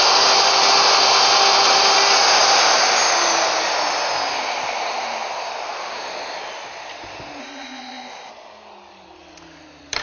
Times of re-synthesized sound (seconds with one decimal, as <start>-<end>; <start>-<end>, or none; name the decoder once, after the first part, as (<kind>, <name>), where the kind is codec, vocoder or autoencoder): 7.4-8.3 (codec, ZipCodec)